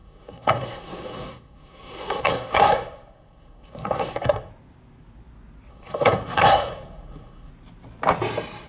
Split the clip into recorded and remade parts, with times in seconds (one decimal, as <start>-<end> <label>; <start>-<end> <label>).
0.0-4.5 remade; 4.5-5.7 recorded; 5.7-7.5 remade; 7.5-8.7 recorded

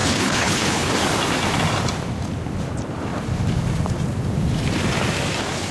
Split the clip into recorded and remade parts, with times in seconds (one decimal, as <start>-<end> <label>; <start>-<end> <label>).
0.0-0.9 remade; 0.9-5.7 recorded

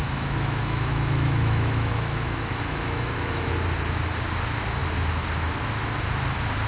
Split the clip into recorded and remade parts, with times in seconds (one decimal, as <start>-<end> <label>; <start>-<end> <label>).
0.0-3.5 remade; 3.5-6.7 recorded

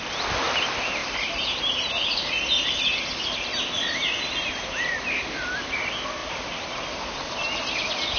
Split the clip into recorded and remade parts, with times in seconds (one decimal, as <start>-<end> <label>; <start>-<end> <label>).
0.0-1.0 recorded; 1.0-1.6 remade; 1.6-6.2 recorded; 6.2-7.0 remade; 7.0-8.2 recorded

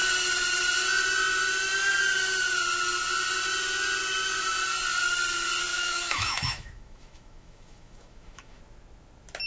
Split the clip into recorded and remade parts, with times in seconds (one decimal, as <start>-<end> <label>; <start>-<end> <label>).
0.0-5.7 recorded; 5.7-8.6 remade; 8.6-9.5 recorded

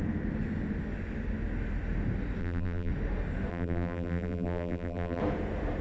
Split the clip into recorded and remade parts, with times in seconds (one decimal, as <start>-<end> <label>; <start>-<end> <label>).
0.0-2.4 recorded; 2.4-2.9 remade; 2.9-3.5 recorded; 3.5-5.2 remade; 5.2-5.8 recorded